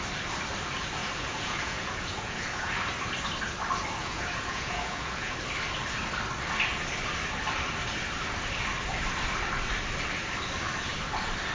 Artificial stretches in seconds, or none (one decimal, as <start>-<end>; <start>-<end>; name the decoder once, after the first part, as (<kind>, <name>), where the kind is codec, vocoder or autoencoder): 1.0-2.7 (vocoder, Vocos); 4.0-5.4